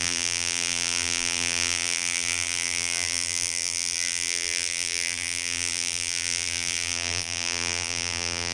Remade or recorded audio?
remade